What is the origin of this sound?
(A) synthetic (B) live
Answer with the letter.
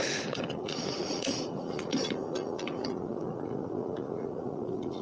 A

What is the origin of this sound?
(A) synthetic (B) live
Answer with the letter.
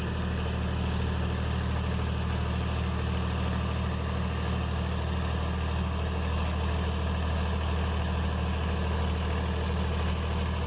B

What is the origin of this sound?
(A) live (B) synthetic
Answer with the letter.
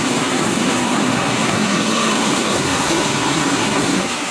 B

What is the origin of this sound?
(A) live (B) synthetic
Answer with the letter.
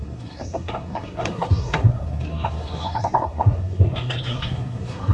B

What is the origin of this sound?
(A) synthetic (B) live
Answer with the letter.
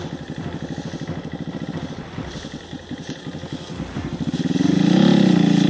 B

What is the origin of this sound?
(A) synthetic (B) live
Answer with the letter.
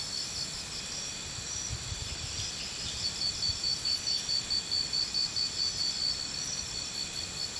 B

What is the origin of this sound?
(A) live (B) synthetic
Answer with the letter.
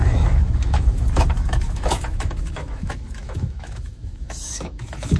B